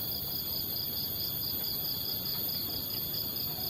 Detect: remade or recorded recorded